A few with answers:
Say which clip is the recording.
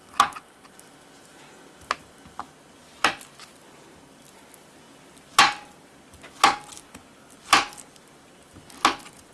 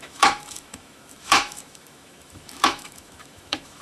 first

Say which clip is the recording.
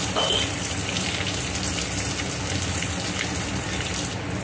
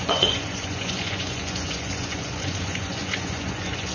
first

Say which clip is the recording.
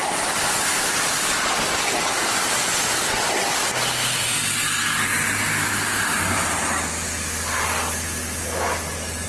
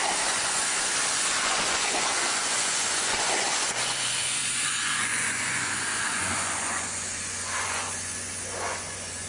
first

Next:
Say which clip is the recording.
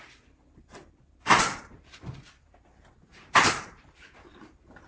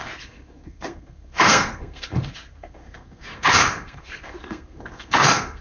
first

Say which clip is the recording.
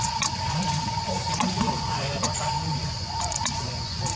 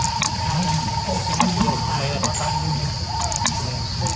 second